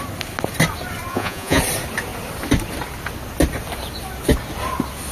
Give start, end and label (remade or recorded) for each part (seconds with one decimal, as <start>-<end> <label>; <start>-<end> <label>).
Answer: 0.0-1.1 recorded; 1.1-1.6 remade; 1.6-5.1 recorded